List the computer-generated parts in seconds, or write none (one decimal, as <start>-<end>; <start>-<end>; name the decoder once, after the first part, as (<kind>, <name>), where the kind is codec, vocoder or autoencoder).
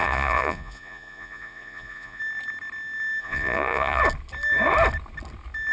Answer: 0.0-2.2 (vocoder, Vocos); 3.2-4.0